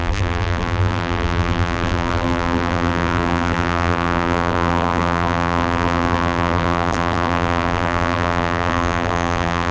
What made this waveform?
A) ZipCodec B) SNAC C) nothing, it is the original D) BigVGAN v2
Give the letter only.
D